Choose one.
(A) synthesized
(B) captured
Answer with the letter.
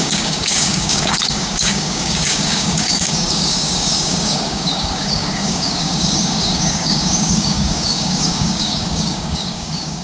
A